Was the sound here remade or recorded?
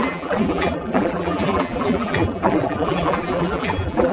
remade